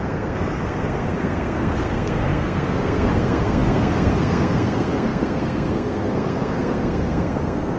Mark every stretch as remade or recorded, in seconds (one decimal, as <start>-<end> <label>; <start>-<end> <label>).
0.0-7.8 remade